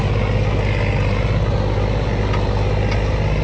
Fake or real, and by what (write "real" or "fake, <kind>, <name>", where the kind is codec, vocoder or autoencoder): real